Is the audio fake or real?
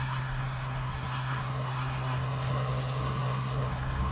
fake